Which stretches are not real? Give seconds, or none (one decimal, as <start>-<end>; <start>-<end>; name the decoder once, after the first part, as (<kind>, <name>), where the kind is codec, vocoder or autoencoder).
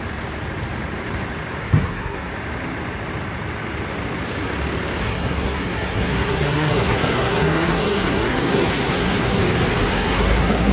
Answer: 1.6-2.3 (codec, SNAC); 5.0-9.4; 9.9-10.7